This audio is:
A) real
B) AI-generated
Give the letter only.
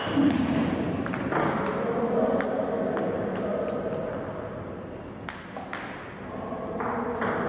A